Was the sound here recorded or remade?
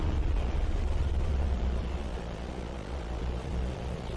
remade